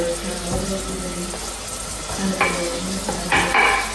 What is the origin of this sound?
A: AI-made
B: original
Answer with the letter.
B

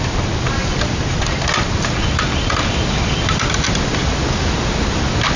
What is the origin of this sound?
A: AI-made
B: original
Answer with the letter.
B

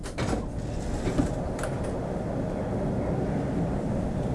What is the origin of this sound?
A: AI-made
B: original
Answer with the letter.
B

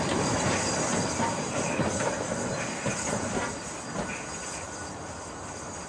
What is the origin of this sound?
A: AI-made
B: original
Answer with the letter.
B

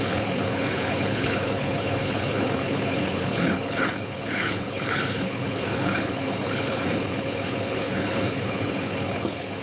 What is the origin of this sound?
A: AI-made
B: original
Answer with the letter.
A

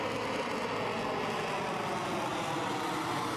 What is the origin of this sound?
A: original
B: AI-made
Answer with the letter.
A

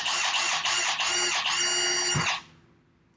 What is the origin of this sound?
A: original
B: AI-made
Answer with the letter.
A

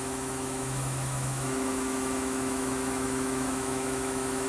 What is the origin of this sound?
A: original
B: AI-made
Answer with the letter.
B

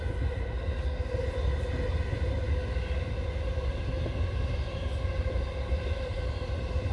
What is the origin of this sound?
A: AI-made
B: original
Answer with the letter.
B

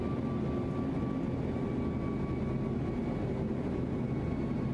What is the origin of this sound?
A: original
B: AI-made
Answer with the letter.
A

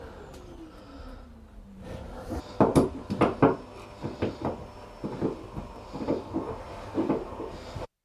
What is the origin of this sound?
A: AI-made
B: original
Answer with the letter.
B